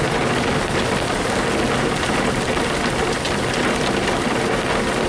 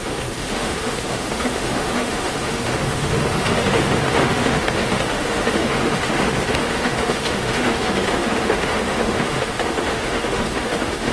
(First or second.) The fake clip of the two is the second